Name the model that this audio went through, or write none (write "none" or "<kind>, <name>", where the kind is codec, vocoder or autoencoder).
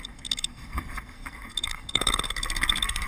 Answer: codec, SNAC